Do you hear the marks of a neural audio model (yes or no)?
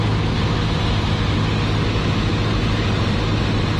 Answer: no